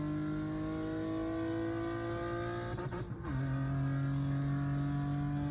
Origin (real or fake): real